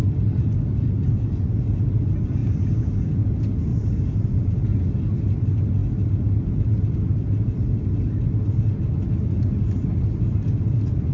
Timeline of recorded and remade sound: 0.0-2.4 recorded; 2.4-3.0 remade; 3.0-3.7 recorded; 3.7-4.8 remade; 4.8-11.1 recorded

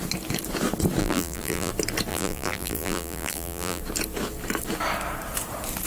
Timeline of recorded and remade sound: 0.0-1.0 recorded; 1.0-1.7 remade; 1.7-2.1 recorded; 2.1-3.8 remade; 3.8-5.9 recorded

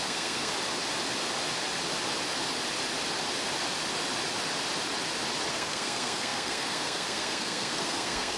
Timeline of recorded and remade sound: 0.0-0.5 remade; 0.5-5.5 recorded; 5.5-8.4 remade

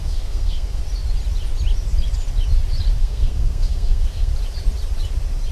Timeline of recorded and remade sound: 0.0-0.8 remade; 0.8-3.0 recorded; 3.0-4.3 remade; 4.3-5.5 recorded

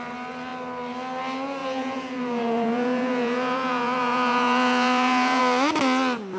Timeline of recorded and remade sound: 0.0-1.6 recorded; 1.6-5.4 remade; 5.4-6.4 recorded

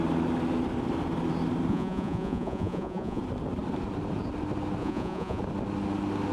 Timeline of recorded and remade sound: 0.0-1.7 recorded; 1.7-3.2 remade; 3.2-4.8 recorded; 4.8-5.4 remade; 5.4-6.3 recorded